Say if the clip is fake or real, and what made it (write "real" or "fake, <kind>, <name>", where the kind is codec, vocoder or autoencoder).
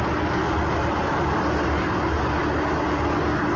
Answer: real